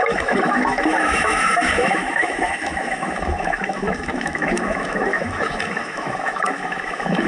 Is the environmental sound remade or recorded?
remade